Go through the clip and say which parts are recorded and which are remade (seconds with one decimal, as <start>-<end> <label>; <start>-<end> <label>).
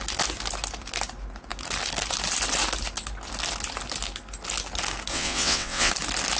0.0-5.1 recorded; 5.1-5.9 remade; 5.9-6.4 recorded